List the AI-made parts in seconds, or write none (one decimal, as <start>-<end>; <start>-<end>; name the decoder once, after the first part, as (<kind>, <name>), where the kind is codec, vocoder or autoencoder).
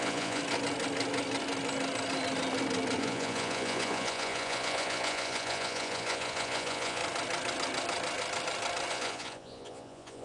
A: 0.0-0.4 (vocoder, Vocos); 3.0-7.0; 8.9-10.2